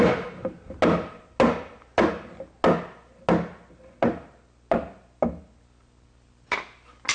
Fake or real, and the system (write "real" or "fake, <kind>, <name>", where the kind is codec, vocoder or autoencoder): real